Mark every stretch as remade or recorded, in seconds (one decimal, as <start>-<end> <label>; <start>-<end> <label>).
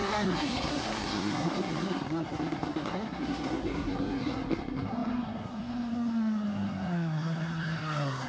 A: 0.0-8.3 remade